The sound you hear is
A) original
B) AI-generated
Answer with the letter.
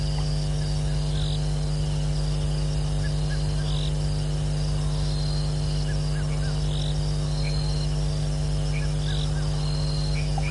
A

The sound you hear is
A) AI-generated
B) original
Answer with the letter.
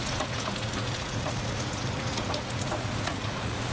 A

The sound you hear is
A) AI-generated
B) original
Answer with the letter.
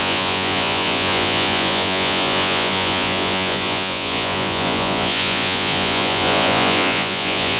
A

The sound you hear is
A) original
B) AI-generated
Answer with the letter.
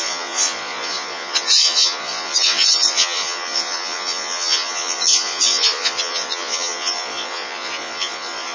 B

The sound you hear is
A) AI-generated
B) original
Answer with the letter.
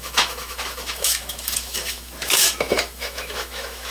A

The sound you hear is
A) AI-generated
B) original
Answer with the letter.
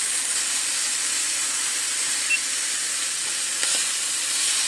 B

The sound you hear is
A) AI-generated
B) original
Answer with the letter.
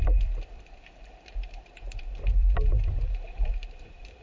A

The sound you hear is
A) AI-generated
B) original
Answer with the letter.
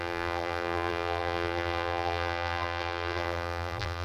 A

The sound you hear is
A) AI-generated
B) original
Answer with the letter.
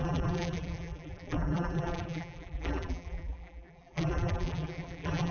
A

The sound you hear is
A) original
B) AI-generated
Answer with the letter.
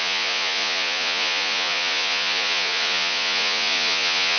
B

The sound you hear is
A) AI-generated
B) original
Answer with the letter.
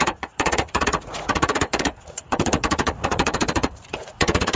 A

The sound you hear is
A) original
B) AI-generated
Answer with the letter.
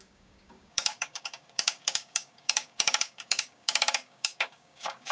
B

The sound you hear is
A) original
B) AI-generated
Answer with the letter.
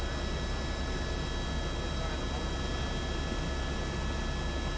A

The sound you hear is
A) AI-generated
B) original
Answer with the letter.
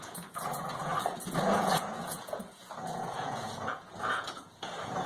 A